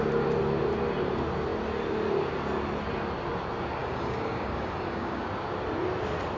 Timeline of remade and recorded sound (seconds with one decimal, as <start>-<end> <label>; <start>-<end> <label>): 0.0-3.8 recorded; 3.8-5.3 remade; 5.3-6.4 recorded